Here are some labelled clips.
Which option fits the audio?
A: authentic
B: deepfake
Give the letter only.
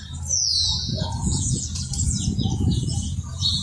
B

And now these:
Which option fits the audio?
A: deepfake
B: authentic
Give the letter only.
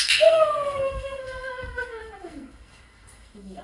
A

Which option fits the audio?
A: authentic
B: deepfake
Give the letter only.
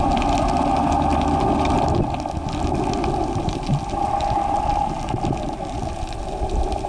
A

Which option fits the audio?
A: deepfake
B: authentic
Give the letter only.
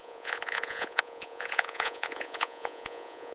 A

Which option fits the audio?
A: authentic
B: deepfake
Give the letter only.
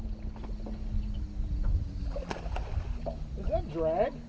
A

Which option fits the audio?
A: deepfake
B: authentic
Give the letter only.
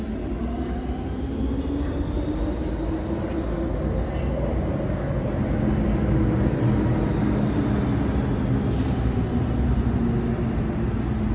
B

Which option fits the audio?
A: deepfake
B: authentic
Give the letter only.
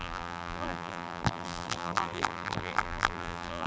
A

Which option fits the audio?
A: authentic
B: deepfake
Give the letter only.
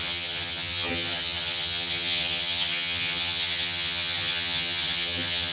B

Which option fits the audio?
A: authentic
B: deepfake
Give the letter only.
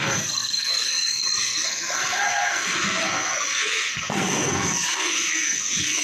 B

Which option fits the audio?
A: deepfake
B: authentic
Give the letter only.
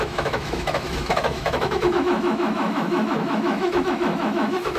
A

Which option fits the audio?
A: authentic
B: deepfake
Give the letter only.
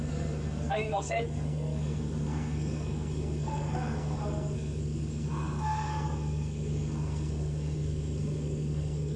B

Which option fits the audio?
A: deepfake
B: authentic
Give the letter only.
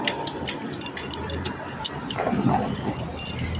B